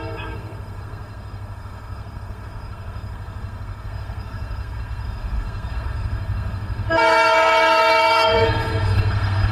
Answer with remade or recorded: remade